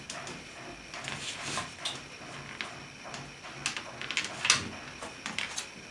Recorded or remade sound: recorded